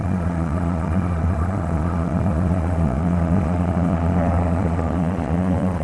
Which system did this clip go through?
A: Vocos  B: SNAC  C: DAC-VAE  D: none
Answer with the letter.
A